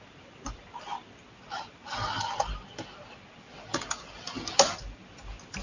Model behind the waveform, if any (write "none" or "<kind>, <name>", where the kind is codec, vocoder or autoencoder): none